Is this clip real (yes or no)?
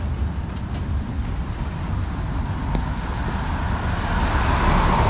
yes